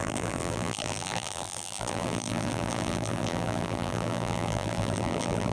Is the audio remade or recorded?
remade